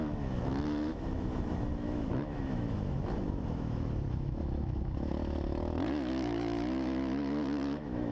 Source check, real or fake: fake